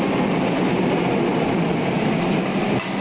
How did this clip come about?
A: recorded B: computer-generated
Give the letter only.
A